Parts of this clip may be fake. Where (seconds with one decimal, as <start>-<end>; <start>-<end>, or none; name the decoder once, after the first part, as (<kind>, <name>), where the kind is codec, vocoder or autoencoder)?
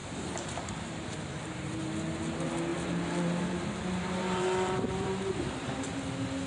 0.0-1.8 (vocoder, BigVGAN v2); 2.7-5.7